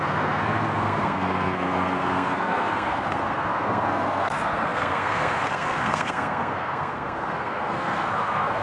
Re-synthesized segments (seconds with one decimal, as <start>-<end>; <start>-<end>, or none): 0.0-8.6